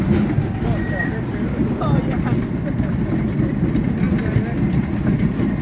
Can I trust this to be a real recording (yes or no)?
yes